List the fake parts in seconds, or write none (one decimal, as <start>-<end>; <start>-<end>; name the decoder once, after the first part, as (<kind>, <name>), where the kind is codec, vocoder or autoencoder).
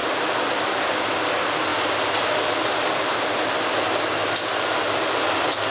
none